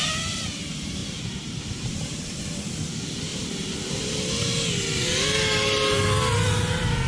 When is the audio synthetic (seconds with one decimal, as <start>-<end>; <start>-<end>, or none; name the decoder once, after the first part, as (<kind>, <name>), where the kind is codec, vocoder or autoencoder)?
1.0-2.9 (vocoder, BigVGAN v2); 3.3-4.3

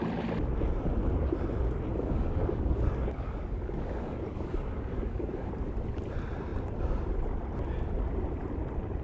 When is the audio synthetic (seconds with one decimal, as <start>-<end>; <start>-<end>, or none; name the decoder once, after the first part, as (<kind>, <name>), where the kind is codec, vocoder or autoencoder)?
1.9-5.5 (codec, DAC)

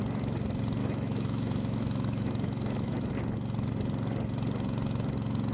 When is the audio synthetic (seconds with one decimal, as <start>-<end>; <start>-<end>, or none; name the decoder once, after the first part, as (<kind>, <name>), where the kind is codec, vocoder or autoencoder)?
0.8-3.1 (autoencoder, DAC-VAE)

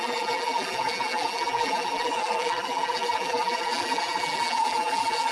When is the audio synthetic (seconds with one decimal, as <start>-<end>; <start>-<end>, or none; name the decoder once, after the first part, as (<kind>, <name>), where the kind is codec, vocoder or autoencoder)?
0.0-5.3 (vocoder, BigVGAN v2)

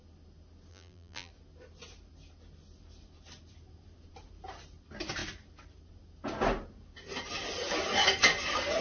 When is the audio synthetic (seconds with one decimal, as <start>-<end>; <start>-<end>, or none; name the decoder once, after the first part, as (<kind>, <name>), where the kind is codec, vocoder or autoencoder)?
0.7-1.3 (vocoder, BigVGAN v2)

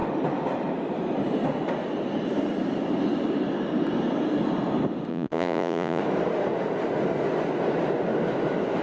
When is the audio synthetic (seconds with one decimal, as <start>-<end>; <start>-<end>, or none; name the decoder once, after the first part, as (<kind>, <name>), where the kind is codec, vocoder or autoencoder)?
5.1-6.0 (vocoder, Vocos)